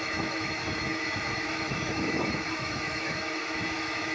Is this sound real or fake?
fake